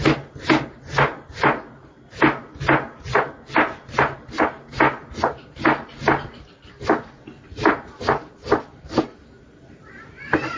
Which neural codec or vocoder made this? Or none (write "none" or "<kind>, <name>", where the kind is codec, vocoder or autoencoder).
vocoder, BigVGAN v2